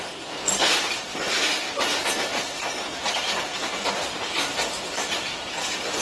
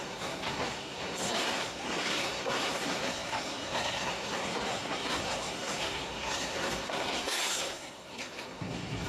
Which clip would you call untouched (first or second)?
first